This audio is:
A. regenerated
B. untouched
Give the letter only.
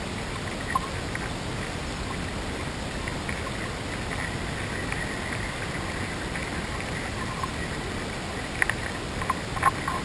B